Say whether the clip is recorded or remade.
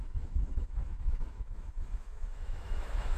remade